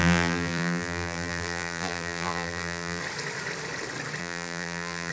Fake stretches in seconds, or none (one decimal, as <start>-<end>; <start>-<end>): 0.0-3.0; 4.2-5.1